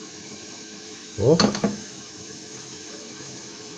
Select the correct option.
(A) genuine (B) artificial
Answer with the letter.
B